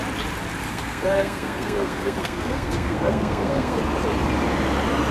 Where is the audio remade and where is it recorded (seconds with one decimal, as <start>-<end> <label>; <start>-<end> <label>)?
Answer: 0.0-0.7 recorded; 0.7-3.8 remade; 3.8-5.1 recorded